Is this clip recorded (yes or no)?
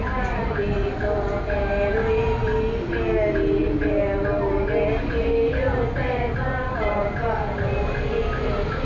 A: yes